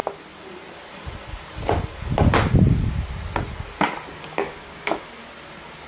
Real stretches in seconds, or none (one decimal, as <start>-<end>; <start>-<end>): 0.0-4.1; 5.2-5.9